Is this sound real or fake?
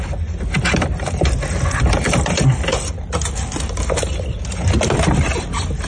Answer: real